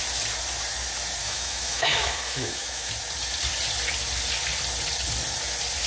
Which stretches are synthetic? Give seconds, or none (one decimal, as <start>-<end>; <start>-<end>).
1.2-2.9